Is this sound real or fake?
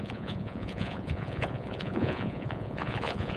fake